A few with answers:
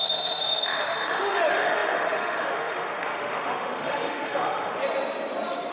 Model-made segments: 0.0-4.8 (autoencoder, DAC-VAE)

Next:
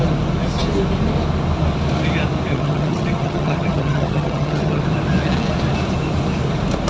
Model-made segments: 2.5-4.8 (vocoder, HiFi-GAN)